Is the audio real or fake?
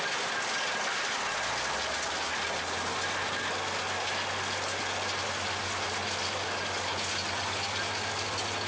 real